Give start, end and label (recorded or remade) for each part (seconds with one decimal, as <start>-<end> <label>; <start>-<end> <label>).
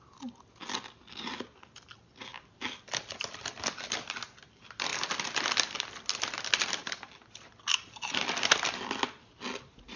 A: 0.0-10.0 recorded